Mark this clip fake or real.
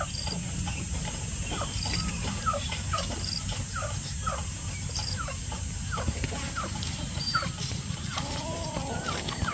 real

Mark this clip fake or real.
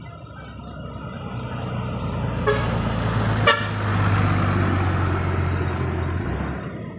real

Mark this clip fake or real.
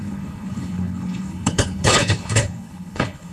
fake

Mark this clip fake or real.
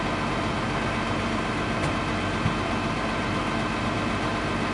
real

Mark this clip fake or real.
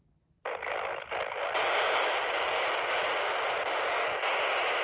real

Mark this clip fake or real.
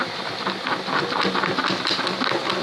real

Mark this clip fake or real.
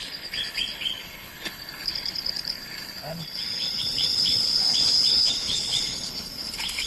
fake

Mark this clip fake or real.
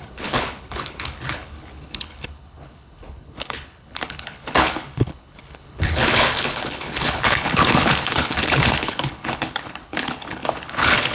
fake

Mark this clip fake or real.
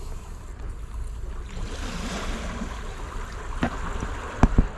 real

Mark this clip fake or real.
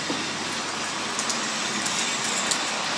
real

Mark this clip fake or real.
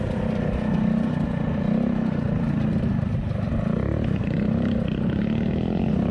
real